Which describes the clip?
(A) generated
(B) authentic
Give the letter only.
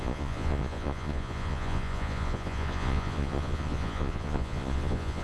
A